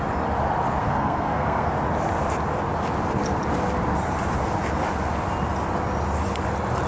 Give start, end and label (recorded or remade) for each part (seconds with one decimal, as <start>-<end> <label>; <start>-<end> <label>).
0.0-0.8 recorded; 0.8-1.7 remade; 1.7-6.9 recorded